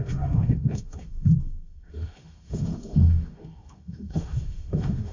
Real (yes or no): no